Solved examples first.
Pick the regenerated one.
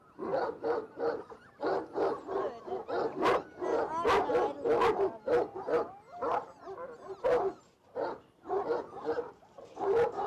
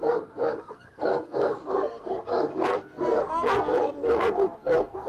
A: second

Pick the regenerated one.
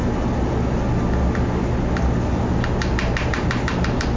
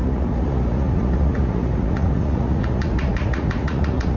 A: second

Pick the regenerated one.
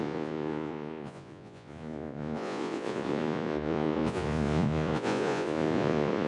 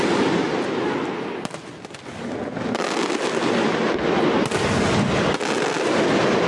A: first